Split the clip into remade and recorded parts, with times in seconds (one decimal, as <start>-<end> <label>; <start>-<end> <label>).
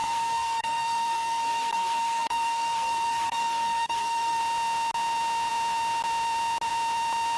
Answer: 0.0-4.4 remade; 4.4-7.4 recorded